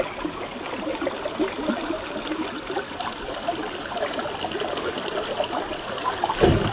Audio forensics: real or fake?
real